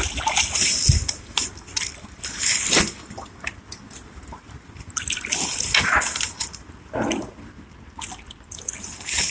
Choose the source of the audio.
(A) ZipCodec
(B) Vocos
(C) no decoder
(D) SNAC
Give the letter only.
C